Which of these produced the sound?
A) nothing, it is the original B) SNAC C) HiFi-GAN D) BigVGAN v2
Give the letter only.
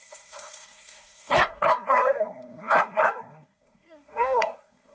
B